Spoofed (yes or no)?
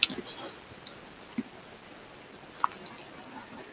no